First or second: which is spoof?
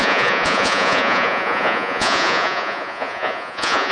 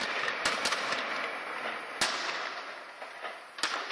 first